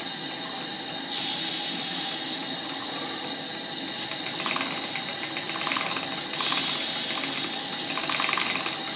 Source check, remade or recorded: recorded